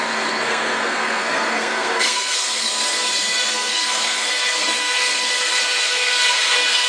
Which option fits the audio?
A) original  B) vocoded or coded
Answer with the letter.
B